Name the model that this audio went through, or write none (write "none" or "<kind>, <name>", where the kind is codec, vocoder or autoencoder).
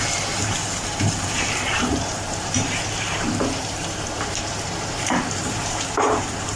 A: vocoder, BigVGAN v2